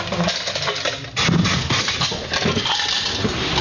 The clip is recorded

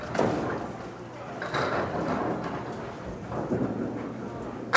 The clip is recorded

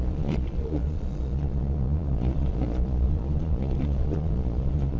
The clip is remade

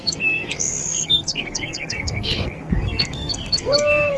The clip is remade